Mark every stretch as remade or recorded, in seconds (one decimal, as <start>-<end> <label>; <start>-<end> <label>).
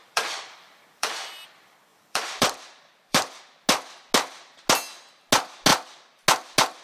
0.0-1.5 remade; 1.5-1.9 recorded; 1.9-3.4 remade; 3.4-6.8 recorded